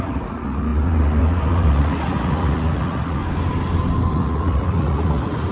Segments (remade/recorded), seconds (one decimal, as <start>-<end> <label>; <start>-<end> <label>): 0.0-3.2 remade; 3.2-4.1 recorded; 4.1-5.5 remade